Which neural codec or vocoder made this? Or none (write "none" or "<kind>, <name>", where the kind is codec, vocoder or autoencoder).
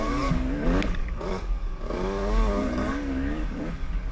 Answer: codec, DAC